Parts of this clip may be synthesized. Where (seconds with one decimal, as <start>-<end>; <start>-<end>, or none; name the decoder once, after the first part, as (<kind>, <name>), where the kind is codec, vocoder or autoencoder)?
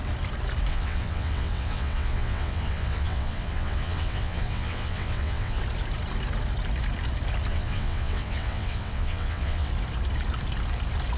0.7-5.6 (vocoder, WaveNeXt); 7.5-9.7